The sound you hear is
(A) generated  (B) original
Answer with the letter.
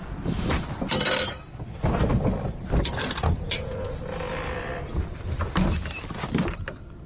B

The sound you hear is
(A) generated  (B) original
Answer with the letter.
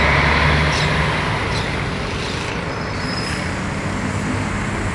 B